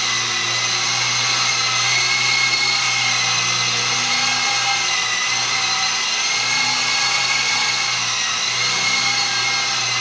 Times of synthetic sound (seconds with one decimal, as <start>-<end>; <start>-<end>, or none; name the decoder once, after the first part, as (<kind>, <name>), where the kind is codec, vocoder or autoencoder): none